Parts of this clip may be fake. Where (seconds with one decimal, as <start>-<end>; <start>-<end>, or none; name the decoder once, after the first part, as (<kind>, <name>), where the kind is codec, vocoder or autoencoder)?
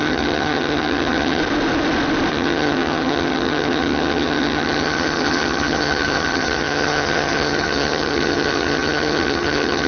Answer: 0.0-1.4 (vocoder, HiFi-GAN); 2.3-9.9